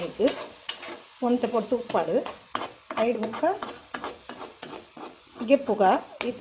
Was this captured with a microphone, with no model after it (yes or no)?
no